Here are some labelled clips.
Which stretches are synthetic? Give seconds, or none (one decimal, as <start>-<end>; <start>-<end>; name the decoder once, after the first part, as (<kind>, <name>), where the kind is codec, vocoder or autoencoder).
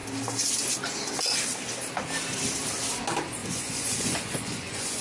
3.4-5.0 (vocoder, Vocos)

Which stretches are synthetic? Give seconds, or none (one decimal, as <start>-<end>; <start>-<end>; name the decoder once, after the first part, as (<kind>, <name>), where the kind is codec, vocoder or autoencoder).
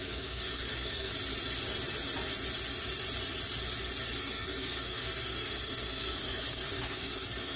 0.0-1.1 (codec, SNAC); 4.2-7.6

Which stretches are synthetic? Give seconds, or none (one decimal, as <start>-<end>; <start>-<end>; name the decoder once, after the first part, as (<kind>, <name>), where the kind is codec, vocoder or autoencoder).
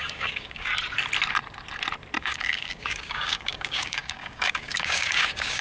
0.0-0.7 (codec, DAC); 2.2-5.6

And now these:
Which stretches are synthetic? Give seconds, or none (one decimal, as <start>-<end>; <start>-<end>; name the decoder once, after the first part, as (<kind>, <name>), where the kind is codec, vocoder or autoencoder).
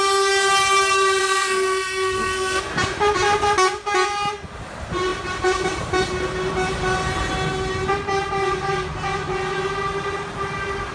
1.2-2.6 (codec, SNAC)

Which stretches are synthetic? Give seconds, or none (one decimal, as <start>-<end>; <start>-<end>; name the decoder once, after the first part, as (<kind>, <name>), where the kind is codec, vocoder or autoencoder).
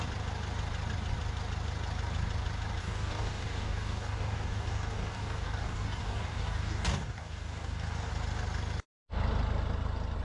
2.8-8.1 (codec, DAC)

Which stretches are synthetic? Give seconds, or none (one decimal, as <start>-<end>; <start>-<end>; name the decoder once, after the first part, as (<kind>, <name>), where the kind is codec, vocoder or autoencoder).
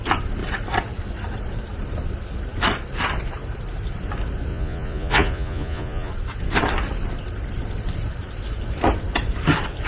4.5-6.1 (vocoder, Vocos)